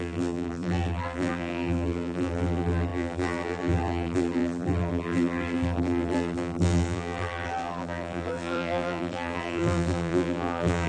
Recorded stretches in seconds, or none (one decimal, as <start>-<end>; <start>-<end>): none